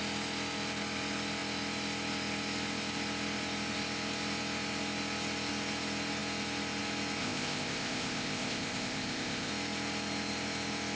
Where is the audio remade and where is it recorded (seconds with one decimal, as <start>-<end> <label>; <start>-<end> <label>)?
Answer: 0.0-7.2 recorded; 7.2-9.5 remade; 9.5-11.0 recorded